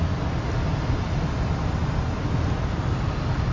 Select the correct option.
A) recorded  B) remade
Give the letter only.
A